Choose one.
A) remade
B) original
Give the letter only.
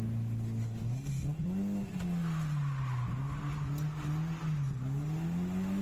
B